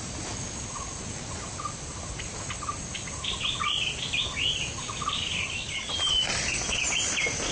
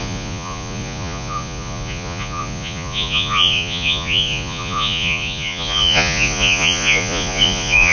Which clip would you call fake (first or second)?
second